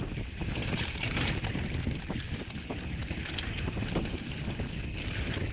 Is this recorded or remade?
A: recorded